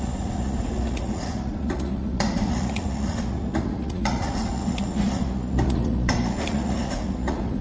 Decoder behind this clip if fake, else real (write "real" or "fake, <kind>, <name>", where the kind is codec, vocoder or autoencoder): fake, vocoder, Vocos